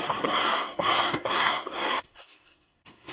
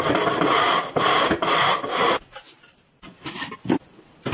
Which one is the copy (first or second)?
first